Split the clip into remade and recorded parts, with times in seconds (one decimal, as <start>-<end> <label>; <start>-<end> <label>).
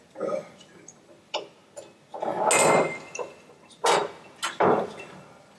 0.0-1.6 remade; 1.6-3.1 recorded; 3.1-4.0 remade; 4.0-4.5 recorded; 4.5-5.6 remade